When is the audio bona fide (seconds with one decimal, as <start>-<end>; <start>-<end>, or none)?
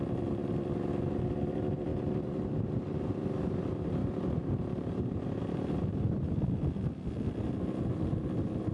0.0-4.0; 5.2-8.7